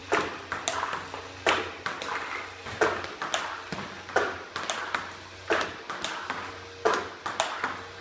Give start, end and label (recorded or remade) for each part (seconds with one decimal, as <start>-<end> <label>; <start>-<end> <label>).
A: 0.0-8.0 recorded